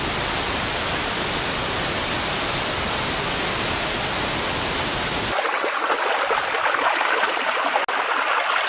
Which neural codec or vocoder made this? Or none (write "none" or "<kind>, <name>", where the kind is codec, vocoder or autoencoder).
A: none